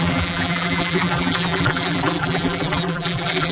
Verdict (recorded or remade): remade